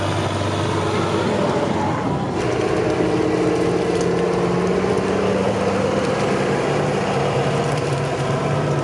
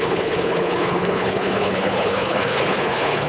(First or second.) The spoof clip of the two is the second